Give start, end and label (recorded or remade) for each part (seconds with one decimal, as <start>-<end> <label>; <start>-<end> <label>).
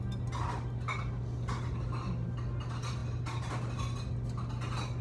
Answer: 0.0-5.0 recorded